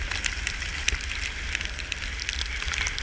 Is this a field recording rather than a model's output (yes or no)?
yes